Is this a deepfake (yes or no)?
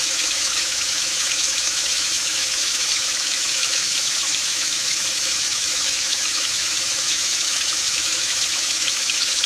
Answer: yes